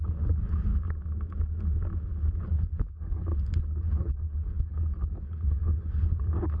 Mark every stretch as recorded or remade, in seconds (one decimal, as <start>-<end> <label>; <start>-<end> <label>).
0.0-0.7 remade; 0.7-2.3 recorded; 2.3-6.6 remade